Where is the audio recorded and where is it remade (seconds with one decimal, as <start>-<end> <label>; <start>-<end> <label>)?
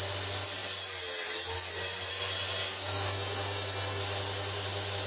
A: 0.0-2.6 recorded; 2.6-4.0 remade; 4.0-5.1 recorded